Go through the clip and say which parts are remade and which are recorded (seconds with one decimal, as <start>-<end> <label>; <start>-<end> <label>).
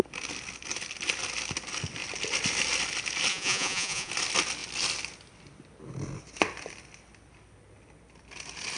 0.0-3.3 recorded; 3.3-4.1 remade; 4.1-8.8 recorded